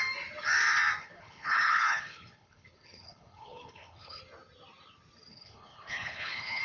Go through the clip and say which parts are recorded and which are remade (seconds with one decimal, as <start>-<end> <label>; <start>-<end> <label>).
0.0-1.0 recorded; 1.0-4.2 remade; 4.2-5.3 recorded; 5.3-6.6 remade